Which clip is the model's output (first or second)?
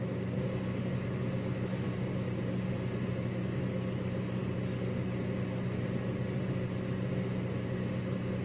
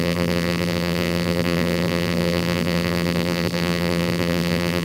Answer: second